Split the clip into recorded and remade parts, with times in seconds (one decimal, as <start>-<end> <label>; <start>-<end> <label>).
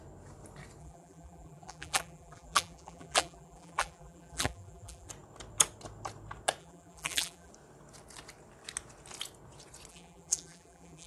0.0-0.8 recorded; 0.8-5.1 remade; 5.1-6.6 recorded; 6.6-7.5 remade; 7.5-9.9 recorded; 9.9-11.1 remade